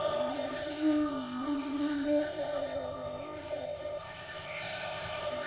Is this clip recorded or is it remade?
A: remade